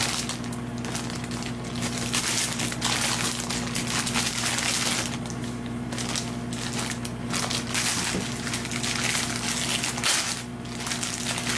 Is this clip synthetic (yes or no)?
no